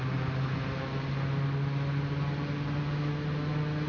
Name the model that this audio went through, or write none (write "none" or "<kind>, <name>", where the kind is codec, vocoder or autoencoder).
none